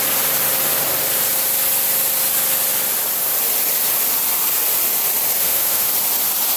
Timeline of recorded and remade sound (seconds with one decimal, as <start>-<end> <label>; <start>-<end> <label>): 0.0-5.4 recorded; 5.4-5.9 remade; 5.9-6.6 recorded